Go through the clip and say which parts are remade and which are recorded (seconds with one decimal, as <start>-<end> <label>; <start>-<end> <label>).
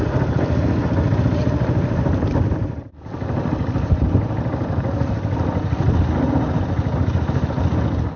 0.0-1.4 recorded; 1.4-6.3 remade; 6.3-8.2 recorded